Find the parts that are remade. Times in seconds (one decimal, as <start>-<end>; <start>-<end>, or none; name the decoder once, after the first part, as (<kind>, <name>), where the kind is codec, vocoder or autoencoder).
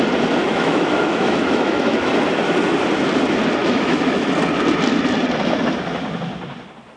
0.4-2.1 (autoencoder, DAC-VAE); 3.6-4.3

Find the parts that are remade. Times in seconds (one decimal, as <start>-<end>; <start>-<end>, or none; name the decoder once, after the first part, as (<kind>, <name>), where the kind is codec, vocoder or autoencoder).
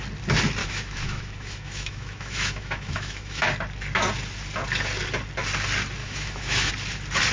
0.6-3.4 (autoencoder, DAC-VAE); 6.0-6.7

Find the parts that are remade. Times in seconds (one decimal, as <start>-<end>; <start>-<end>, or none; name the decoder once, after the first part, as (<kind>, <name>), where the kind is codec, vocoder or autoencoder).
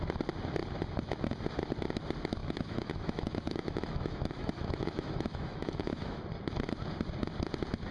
2.4-6.2 (autoencoder, DAC-VAE)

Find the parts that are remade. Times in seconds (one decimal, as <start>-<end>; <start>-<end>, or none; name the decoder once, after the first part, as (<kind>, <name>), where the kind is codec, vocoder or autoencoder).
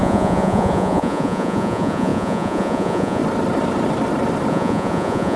0.0-3.2 (vocoder, Vocos); 4.5-5.4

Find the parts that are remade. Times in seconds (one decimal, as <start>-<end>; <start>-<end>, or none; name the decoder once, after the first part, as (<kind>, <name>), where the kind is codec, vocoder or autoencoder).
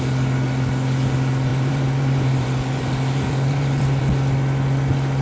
1.5-4.0 (vocoder, BigVGAN v2)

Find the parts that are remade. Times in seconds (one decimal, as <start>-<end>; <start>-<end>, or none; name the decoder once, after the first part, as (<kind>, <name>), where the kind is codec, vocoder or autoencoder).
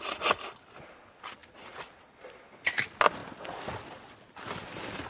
none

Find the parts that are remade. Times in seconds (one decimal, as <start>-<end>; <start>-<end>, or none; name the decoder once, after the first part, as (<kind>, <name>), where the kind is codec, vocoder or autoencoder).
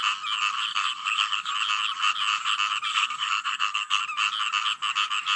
0.7-1.5 (codec, SNAC); 2.9-4.0